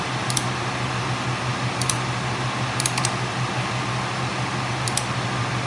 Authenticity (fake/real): real